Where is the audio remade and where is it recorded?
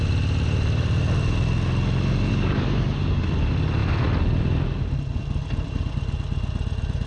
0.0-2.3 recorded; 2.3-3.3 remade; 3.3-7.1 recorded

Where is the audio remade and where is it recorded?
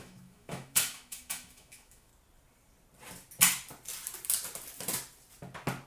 0.0-2.1 remade; 2.1-5.9 recorded